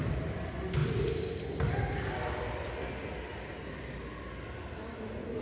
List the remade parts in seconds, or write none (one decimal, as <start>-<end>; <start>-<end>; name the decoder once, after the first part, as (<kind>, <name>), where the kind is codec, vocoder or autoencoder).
none